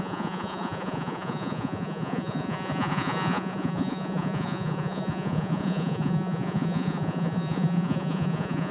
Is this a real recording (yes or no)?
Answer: no